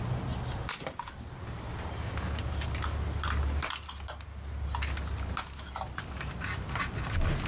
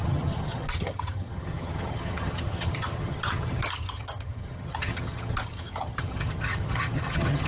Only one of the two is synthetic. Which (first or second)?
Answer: second